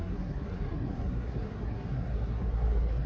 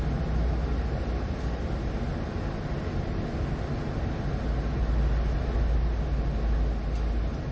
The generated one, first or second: first